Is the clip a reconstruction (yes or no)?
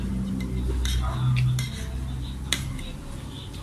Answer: no